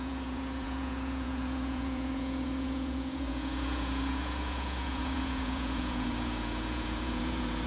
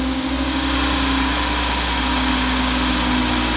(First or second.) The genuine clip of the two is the second